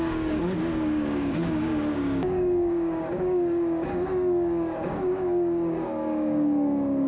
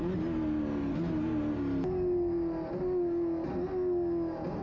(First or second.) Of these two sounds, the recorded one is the second